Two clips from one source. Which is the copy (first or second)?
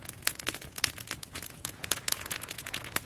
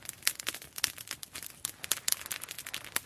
first